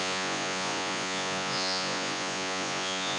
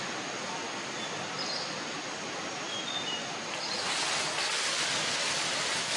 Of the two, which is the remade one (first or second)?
first